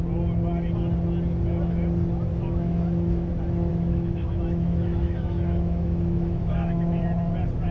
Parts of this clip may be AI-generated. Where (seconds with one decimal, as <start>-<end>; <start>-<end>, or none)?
2.3-3.3; 3.7-7.0